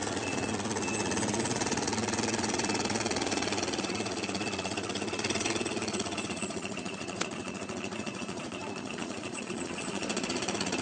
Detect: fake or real fake